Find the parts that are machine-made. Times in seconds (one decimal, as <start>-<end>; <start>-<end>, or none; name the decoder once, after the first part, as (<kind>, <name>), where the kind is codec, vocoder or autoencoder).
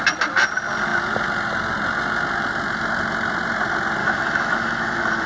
4.0-5.3 (autoencoder, DAC-VAE)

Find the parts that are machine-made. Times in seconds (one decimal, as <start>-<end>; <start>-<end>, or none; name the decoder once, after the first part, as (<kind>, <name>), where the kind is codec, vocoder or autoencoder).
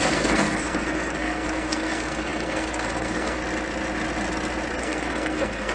0.0-3.4 (codec, SNAC); 4.8-5.7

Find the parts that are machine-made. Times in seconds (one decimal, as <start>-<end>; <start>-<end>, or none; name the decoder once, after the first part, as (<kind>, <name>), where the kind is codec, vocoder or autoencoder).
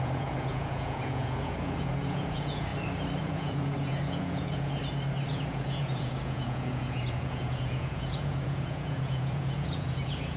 0.0-2.7 (vocoder, Vocos); 3.2-4.8; 5.3-10.4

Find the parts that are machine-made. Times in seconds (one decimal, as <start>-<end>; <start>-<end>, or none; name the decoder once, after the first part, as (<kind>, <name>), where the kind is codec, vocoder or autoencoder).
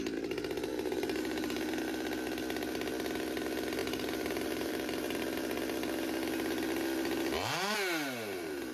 0.7-1.8 (vocoder, BigVGAN v2); 3.8-5.2